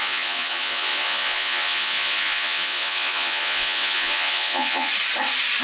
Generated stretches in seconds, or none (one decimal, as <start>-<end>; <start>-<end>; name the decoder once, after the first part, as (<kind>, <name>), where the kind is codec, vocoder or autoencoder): 0.0-4.9 (vocoder, Vocos)